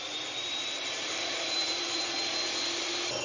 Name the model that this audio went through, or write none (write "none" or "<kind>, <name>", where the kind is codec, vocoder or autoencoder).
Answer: vocoder, BigVGAN v2